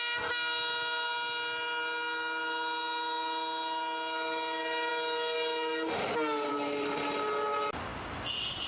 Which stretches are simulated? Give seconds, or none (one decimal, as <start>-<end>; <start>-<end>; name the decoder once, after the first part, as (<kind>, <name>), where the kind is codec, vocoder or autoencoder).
none